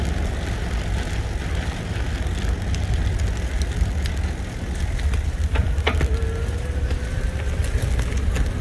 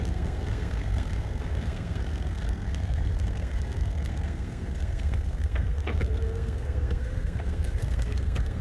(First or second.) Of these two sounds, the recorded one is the first